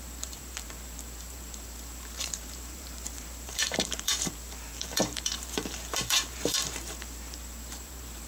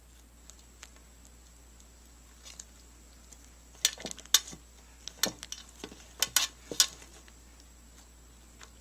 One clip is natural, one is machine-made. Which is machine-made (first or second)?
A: first